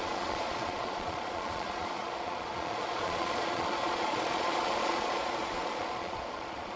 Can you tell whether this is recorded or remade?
remade